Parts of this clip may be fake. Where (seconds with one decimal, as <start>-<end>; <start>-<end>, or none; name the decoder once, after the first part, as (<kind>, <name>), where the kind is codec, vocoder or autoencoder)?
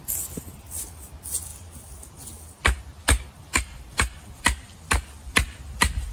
none